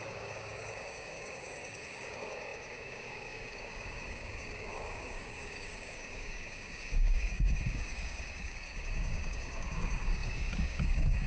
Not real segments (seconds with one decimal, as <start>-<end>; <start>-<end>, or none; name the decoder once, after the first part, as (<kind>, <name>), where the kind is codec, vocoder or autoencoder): 0.0-11.3 (codec, DAC)